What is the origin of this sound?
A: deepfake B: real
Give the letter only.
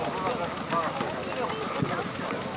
B